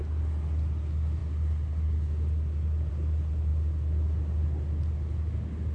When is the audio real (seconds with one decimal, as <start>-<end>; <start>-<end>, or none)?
0.0-5.7